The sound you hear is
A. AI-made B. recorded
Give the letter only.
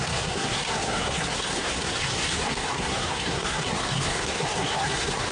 A